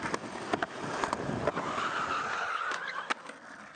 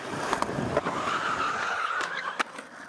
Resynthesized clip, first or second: second